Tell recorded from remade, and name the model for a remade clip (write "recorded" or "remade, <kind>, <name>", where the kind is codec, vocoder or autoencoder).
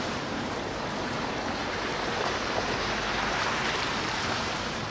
remade, vocoder, BigVGAN v2